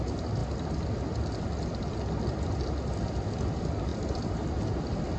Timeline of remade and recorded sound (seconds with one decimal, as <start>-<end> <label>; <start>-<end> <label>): 0.0-5.2 recorded